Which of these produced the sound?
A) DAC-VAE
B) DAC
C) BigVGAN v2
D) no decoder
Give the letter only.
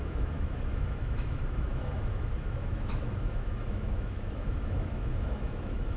A